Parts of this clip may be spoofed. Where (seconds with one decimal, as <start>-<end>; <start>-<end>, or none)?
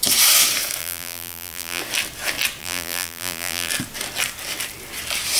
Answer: 0.8-1.8; 2.6-3.7